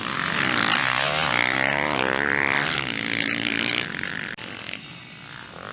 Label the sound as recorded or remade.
recorded